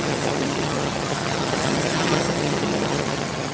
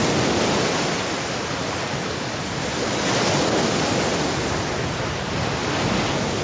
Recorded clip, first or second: second